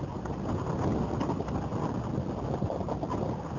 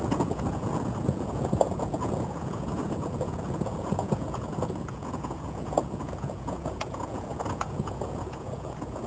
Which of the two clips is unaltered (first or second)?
first